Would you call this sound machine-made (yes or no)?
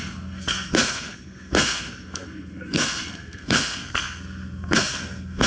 yes